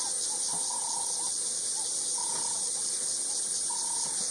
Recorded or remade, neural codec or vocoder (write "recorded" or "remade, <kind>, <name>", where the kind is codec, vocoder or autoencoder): recorded